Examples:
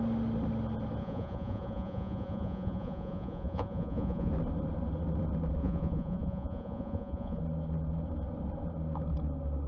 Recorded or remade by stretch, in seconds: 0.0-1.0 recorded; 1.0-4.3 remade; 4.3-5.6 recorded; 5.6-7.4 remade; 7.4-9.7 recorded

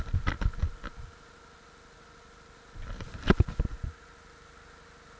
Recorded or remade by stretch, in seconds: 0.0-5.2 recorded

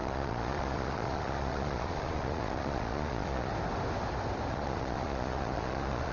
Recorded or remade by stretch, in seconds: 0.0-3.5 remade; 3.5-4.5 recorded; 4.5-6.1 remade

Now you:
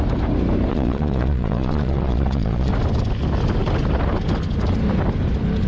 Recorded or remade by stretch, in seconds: 0.0-0.7 recorded; 0.7-2.7 remade; 2.7-5.7 recorded

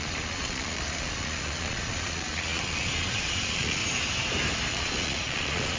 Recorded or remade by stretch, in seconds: 0.0-3.8 remade; 3.8-4.7 recorded; 4.7-5.8 remade